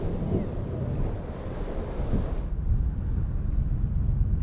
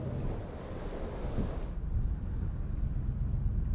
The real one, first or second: second